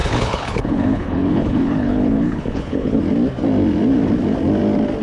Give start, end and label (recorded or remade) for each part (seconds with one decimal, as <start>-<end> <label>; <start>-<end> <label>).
0.0-3.0 remade; 3.0-5.0 recorded